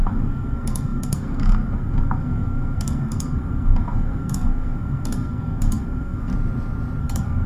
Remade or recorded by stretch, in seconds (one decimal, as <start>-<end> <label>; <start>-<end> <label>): 0.0-6.3 remade; 6.3-7.0 recorded; 7.0-7.5 remade